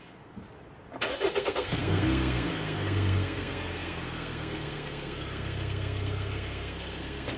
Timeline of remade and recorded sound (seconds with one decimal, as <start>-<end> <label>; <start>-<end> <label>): 0.0-0.4 remade; 0.4-1.3 recorded; 1.3-7.4 remade